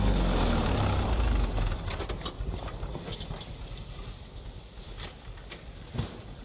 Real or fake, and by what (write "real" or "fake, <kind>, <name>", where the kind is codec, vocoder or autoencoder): real